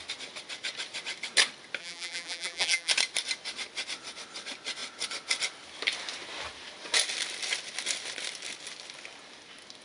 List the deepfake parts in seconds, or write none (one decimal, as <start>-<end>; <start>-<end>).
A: 1.8-2.9